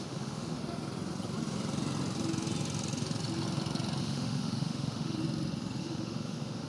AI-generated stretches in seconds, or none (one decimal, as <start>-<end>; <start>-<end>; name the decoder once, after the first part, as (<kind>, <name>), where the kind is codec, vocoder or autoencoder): 0.0-0.6 (autoencoder, DAC-VAE); 4.0-5.2; 5.8-6.7